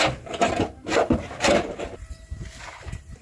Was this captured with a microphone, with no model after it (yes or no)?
no